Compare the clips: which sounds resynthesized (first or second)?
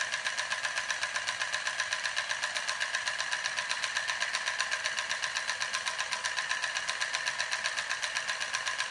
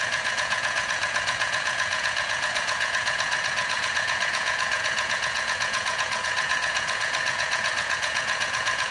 second